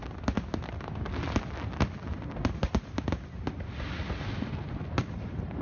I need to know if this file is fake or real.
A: real